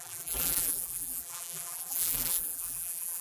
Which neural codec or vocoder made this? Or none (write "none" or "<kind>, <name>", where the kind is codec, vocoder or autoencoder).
vocoder, BigVGAN v2